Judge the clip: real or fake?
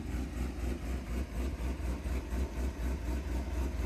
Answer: real